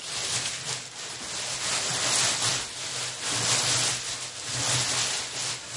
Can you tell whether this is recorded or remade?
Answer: recorded